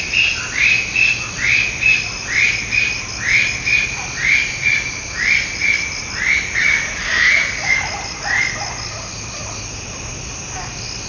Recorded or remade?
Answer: recorded